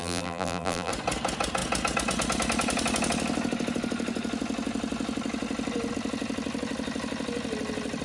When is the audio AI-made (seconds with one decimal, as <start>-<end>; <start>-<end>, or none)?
0.0-0.9